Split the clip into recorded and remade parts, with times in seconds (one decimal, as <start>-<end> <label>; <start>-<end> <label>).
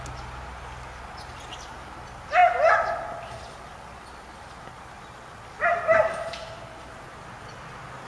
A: 0.0-8.1 recorded